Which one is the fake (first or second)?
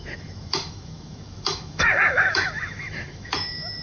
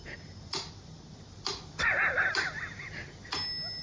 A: first